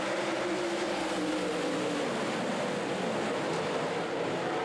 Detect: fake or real real